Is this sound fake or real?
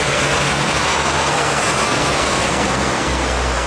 fake